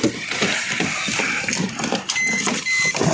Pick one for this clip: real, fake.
fake